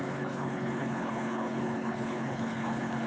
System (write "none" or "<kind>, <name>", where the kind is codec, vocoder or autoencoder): codec, HILCodec